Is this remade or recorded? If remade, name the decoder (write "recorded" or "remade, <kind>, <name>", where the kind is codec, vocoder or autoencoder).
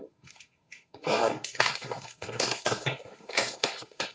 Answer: remade, codec, SNAC